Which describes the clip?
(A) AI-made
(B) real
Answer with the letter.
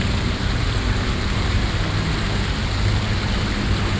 B